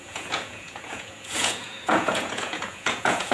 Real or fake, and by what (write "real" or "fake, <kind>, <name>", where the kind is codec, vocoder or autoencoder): fake, vocoder, Vocos